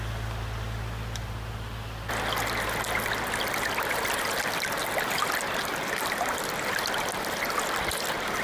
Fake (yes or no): no